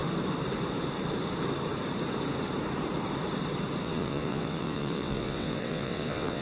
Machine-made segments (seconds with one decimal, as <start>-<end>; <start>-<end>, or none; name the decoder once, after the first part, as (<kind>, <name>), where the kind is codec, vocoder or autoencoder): 3.8-6.4 (vocoder, WaveNeXt)